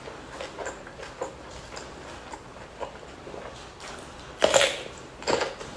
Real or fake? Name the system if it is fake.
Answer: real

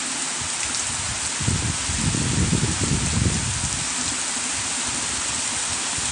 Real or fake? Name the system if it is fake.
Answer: real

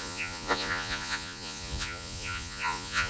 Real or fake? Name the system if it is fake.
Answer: fake, vocoder, Vocos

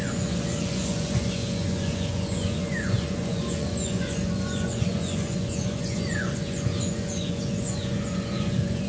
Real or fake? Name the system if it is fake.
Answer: fake, vocoder, Vocos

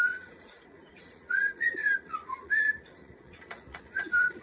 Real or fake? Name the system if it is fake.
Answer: fake, vocoder, Vocos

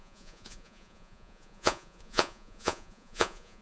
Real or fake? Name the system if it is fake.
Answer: fake, vocoder, Vocos